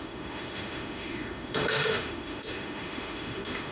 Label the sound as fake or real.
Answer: fake